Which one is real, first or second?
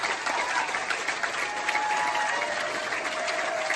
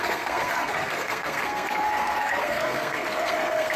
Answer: first